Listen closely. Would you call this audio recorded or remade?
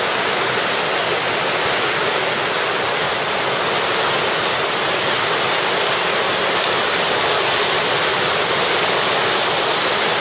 recorded